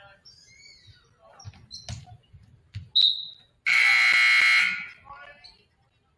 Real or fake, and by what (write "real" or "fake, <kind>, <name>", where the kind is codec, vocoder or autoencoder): real